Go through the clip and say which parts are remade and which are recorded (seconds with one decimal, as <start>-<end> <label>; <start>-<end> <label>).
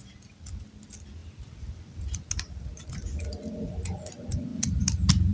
0.0-5.3 recorded